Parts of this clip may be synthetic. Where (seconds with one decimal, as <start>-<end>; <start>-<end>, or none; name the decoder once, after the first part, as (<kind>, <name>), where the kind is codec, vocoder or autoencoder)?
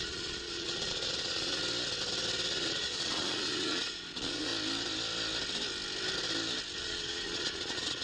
0.0-1.6 (vocoder, Vocos); 2.5-4.5; 6.8-8.0